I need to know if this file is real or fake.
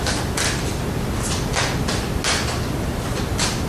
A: real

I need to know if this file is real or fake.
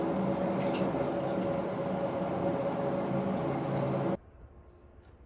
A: real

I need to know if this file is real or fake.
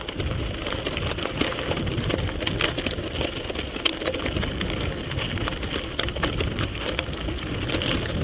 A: real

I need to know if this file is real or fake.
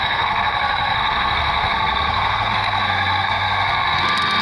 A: fake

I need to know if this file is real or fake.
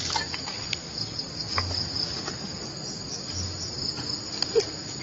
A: real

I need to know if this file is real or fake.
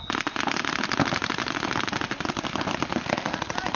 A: real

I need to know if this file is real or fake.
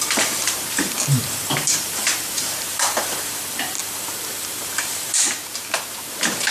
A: fake